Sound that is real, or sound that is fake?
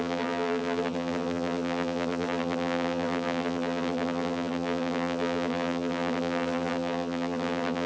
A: fake